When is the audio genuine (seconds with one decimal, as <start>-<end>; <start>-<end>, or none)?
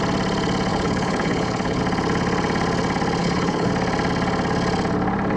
0.0-0.7; 1.8-3.2; 3.7-5.4